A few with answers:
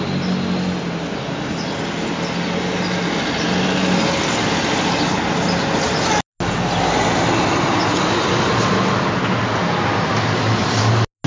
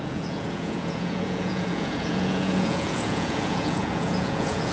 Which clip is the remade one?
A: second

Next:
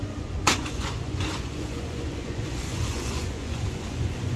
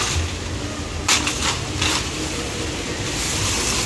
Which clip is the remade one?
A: first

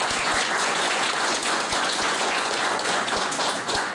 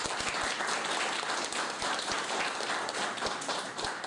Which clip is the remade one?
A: first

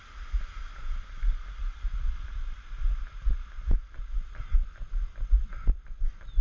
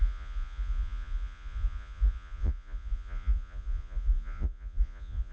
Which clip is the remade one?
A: second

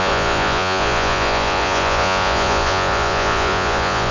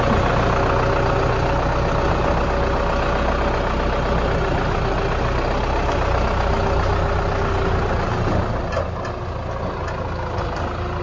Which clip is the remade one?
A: first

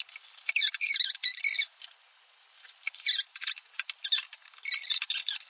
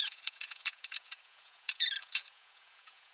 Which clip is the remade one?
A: second